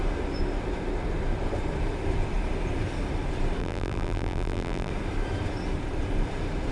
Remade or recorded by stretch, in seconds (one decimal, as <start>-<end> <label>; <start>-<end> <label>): 0.0-3.6 recorded; 3.6-4.9 remade; 4.9-6.7 recorded